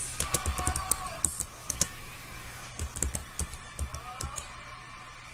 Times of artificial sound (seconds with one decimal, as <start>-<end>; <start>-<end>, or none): 1.6-2.7